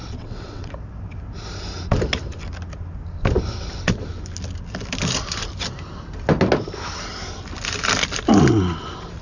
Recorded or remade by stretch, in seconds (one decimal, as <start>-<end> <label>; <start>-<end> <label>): 0.0-0.7 remade; 0.7-9.2 recorded